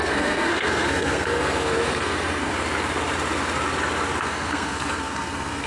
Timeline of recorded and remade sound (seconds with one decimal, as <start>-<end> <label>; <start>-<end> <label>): 0.0-2.5 remade; 2.5-4.2 recorded; 4.2-5.7 remade